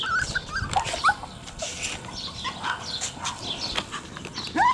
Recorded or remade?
recorded